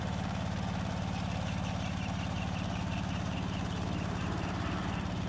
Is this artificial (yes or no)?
yes